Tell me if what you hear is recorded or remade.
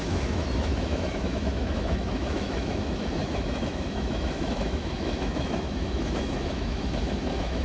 remade